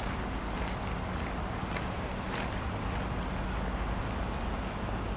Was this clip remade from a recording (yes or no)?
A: no